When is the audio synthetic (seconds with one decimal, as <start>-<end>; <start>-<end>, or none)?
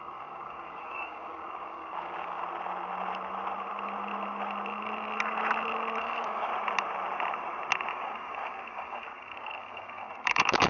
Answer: 0.0-2.4; 6.0-6.5; 7.9-10.7